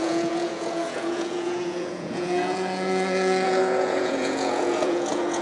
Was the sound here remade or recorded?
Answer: remade